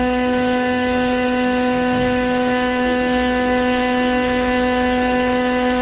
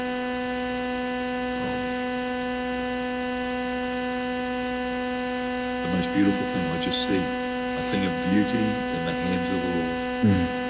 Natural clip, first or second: second